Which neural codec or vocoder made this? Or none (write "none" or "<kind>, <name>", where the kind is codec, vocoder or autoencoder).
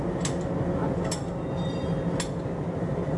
none